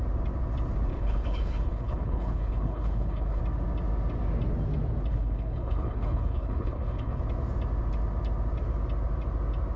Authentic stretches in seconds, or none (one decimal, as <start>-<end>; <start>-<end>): 0.0-0.9; 3.4-5.1; 7.2-9.8